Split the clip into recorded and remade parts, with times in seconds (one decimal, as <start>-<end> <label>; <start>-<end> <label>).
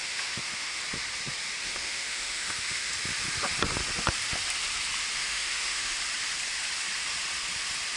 0.0-0.8 remade; 0.8-1.6 recorded; 1.6-2.9 remade; 2.9-5.1 recorded; 5.1-6.0 remade; 6.0-8.0 recorded